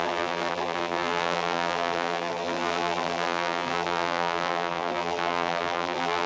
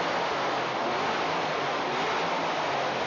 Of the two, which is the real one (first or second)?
second